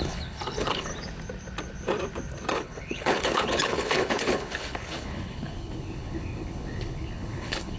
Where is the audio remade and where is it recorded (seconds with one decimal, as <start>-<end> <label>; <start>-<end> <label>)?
0.0-0.9 remade; 0.9-2.5 recorded; 2.5-7.8 remade